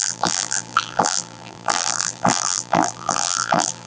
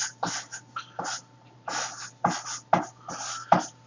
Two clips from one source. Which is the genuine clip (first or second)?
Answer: second